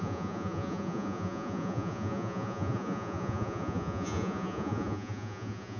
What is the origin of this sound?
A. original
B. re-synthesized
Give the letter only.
B